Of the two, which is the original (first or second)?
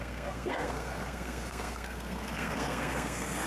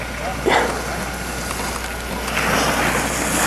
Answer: second